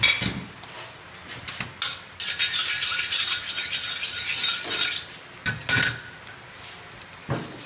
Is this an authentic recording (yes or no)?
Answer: yes